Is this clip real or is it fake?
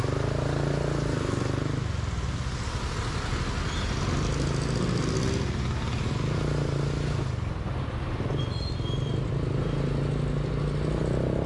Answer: real